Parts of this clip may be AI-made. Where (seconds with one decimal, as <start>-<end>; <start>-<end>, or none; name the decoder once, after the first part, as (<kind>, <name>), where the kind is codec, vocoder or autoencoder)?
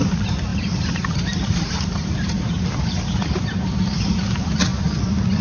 0.5-3.0 (vocoder, BigVGAN v2)